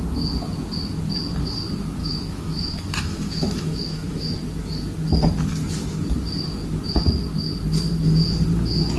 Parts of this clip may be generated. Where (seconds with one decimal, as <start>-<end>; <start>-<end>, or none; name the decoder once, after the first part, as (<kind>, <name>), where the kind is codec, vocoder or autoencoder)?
2.0-4.3 (autoencoder, DAC-VAE)